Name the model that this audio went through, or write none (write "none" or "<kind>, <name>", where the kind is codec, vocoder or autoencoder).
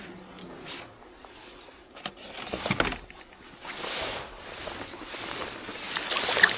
none